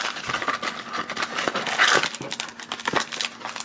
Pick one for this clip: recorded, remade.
recorded